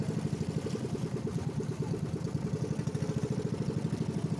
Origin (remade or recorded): recorded